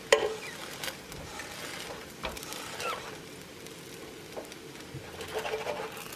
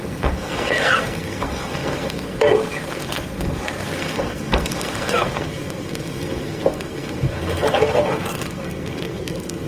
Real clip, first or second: first